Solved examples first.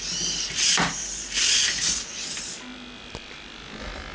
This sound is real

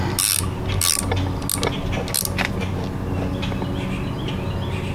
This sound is real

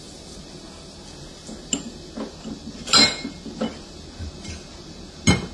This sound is real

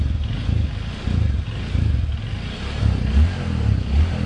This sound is real